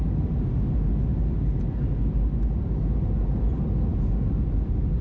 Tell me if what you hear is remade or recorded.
recorded